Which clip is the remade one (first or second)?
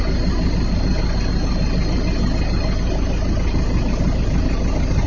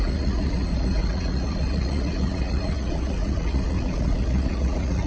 second